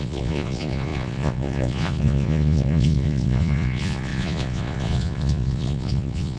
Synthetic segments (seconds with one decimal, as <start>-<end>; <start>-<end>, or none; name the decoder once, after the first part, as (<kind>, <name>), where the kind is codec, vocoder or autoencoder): 0.0-6.4 (vocoder, Vocos)